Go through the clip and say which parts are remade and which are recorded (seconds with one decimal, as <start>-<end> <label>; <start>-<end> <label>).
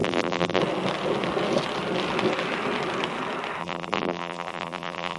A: 0.0-0.6 remade; 0.6-3.6 recorded; 3.6-5.2 remade